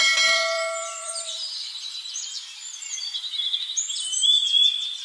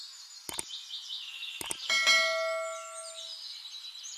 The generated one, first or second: first